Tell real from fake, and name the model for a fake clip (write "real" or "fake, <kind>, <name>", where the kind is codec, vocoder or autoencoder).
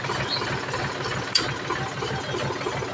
real